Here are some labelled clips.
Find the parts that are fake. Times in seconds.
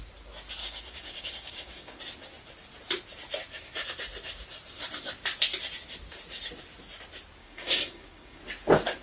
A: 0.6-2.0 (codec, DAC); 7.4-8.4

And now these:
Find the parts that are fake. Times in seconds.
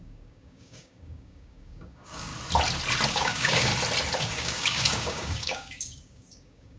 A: 0.0-2.3 (codec, DAC); 3.1-3.7; 4.3-6.8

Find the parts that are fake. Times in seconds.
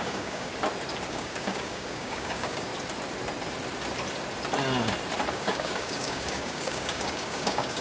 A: 0.0-0.5 (codec, DAC); 1.1-2.7; 5.3-7.8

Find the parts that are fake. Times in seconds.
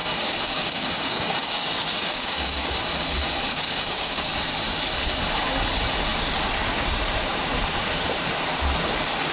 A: 0.0-2.7 (codec, DAC); 3.5-4.3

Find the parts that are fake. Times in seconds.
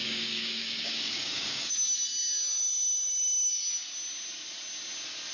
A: 0.0-1.7 (codec, DAC)